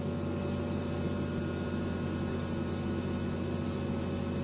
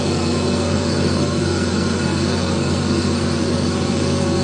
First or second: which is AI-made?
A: second